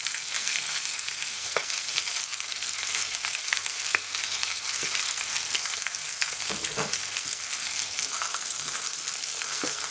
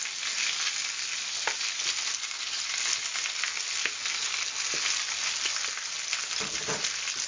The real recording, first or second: second